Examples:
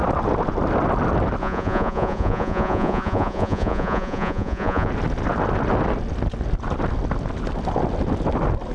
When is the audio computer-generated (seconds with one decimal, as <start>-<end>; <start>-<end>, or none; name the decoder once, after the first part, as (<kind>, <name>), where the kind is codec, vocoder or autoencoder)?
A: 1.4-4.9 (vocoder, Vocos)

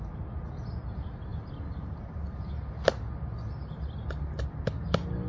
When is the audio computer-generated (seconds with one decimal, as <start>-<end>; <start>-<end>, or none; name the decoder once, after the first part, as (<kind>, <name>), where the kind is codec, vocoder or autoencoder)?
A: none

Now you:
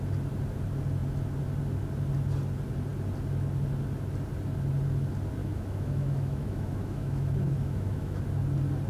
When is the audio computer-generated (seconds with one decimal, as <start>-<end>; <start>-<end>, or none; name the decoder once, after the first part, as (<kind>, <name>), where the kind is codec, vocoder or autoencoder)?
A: 5.4-8.2 (autoencoder, DAC-VAE)